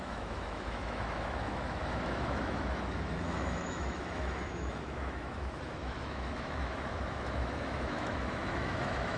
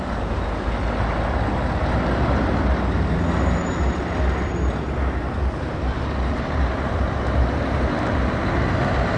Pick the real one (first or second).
second